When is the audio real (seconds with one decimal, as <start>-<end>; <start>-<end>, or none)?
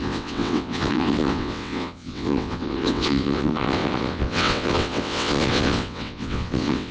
none